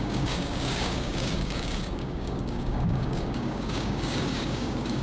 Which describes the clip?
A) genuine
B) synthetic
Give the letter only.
B